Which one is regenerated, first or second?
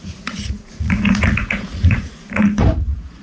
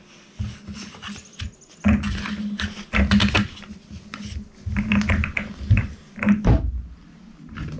first